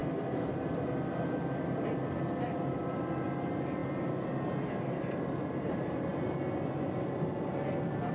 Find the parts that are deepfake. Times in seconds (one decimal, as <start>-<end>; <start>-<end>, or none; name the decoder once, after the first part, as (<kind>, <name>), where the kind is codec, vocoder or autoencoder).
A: none